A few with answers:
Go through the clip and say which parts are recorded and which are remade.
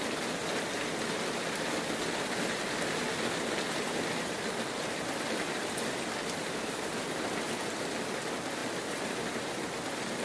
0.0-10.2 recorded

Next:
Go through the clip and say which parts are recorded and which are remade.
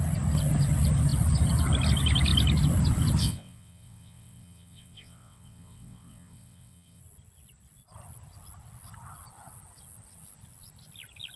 0.0-3.2 recorded; 3.2-7.0 remade; 7.0-11.4 recorded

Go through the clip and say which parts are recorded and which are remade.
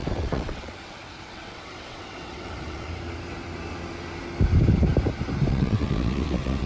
0.0-2.9 remade; 2.9-5.5 recorded; 5.5-6.7 remade